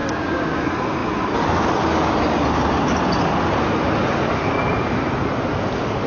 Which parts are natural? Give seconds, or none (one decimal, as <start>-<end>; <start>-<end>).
0.6-6.1